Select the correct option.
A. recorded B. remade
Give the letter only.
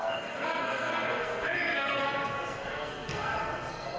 B